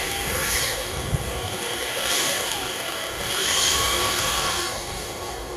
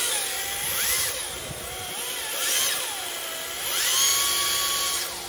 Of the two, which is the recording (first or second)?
second